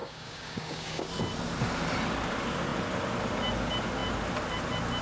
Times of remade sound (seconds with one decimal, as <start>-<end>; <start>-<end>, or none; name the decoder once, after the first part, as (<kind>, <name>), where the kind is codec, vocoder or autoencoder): 0.0-1.1 (codec, DAC)